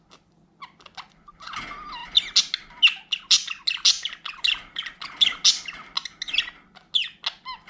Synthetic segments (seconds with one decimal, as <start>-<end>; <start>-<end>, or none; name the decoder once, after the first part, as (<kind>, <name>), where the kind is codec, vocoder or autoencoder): none